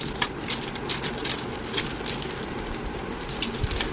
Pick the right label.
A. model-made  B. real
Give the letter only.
B